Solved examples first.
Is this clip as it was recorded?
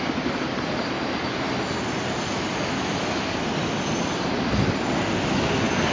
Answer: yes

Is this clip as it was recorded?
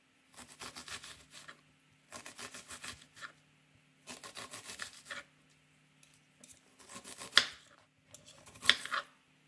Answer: yes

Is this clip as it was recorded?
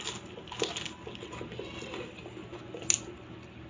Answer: yes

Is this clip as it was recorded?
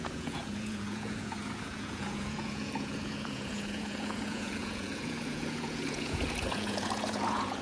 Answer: no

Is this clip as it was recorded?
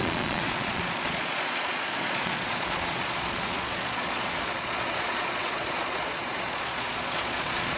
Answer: no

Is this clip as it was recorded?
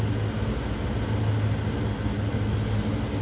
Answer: yes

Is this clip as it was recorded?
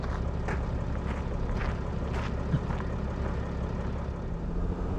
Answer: yes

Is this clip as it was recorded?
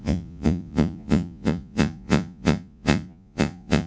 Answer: no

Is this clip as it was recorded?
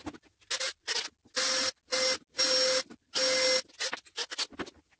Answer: yes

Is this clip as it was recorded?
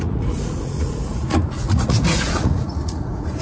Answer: no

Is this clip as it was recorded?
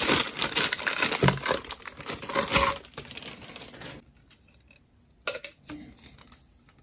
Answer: yes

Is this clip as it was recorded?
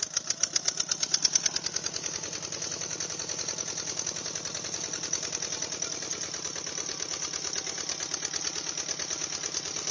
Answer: yes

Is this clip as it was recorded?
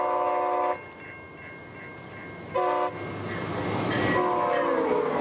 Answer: yes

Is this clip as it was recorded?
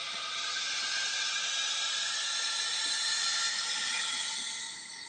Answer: yes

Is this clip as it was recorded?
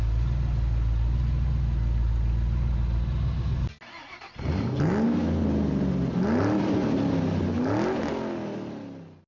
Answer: yes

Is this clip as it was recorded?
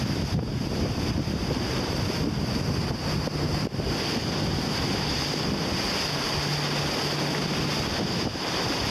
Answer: yes